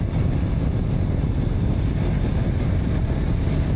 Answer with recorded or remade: recorded